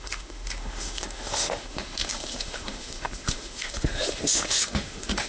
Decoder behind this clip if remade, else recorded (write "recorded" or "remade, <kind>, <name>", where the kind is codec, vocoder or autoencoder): remade, autoencoder, DAC-VAE